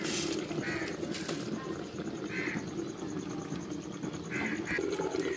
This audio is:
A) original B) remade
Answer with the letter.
A